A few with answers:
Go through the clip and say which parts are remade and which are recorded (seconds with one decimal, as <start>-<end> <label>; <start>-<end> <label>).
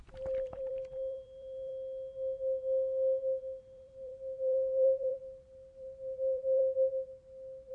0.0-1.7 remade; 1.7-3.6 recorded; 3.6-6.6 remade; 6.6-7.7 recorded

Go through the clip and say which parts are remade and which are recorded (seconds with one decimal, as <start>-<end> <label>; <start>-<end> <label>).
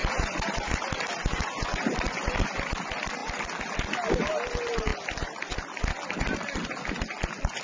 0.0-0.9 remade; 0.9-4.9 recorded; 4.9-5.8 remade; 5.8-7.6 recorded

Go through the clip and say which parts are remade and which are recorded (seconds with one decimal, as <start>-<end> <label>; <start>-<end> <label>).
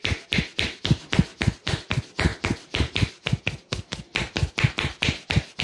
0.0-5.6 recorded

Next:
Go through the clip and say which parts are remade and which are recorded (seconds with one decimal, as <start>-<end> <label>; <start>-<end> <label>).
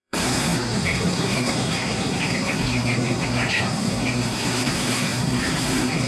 0.0-6.1 remade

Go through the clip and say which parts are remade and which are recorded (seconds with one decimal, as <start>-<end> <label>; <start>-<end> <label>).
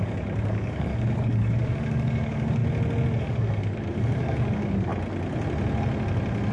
0.0-2.6 remade; 2.6-3.2 recorded; 3.2-4.9 remade; 4.9-6.5 recorded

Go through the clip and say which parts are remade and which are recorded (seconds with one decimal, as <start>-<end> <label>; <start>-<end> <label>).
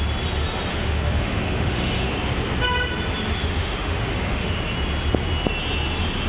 0.0-0.7 recorded; 0.7-2.1 remade; 2.1-3.4 recorded; 3.4-4.5 remade; 4.5-6.3 recorded